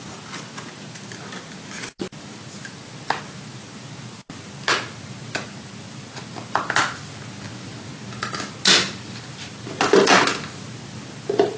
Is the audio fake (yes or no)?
no